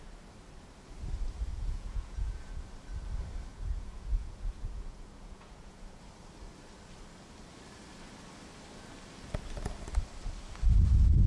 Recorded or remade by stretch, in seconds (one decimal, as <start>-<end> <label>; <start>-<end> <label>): 0.0-1.5 recorded; 1.5-2.6 remade; 2.6-3.5 recorded; 3.5-6.0 remade; 6.0-11.3 recorded